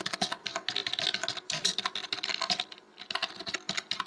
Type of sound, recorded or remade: recorded